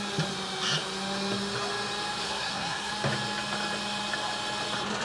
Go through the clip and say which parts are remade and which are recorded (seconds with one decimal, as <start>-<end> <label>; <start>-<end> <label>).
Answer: 0.0-2.2 recorded; 2.2-2.9 remade; 2.9-5.0 recorded